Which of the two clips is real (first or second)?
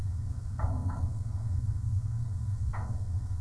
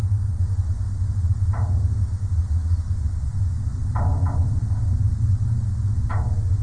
second